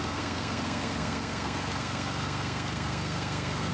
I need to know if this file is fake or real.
fake